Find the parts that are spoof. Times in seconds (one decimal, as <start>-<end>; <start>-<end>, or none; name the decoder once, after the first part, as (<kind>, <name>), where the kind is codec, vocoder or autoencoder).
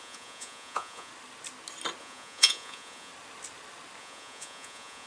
0.0-1.1 (vocoder, Vocos); 2.0-3.1; 4.0-5.1